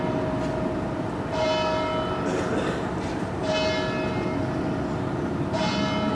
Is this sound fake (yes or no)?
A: no